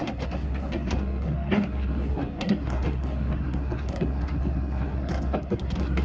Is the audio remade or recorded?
remade